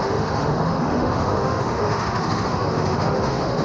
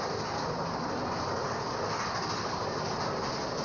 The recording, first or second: second